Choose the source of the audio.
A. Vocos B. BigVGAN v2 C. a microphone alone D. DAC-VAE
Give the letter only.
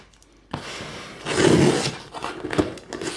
C